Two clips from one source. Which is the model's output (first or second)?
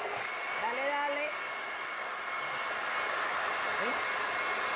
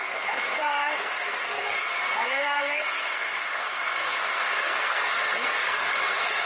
second